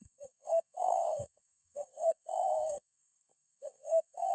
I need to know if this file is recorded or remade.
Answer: remade